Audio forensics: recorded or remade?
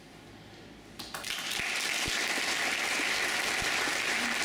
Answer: recorded